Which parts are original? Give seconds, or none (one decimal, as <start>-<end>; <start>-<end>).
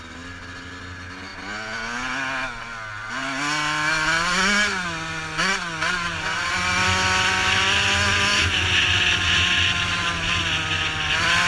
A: 0.0-11.5